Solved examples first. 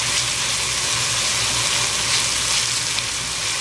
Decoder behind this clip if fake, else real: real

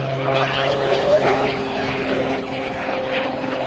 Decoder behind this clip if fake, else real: fake, codec, HILCodec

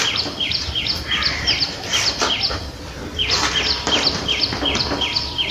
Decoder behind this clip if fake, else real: fake, vocoder, BigVGAN v2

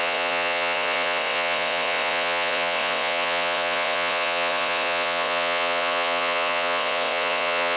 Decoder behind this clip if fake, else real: fake, vocoder, WaveNeXt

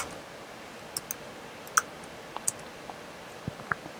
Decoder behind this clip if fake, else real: real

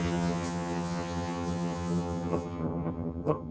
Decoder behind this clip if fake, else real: fake, vocoder, HiFi-GAN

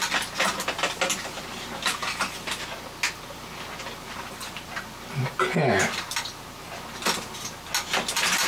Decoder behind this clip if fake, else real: real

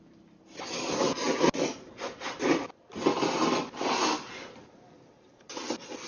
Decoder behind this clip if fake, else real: real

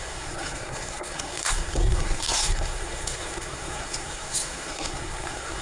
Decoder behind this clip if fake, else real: fake, codec, SNAC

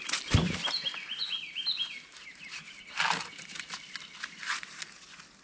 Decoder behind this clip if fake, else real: real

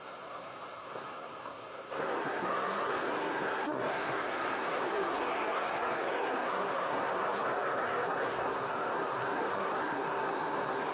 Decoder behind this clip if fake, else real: fake, codec, SNAC